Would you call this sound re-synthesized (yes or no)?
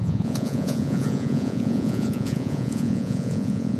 yes